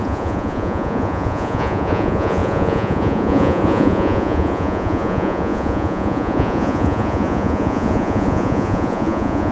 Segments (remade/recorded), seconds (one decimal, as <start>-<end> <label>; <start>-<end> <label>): 0.0-9.5 remade